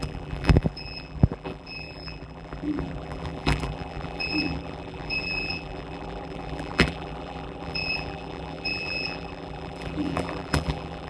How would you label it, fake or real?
fake